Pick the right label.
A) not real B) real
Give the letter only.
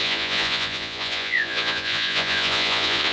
A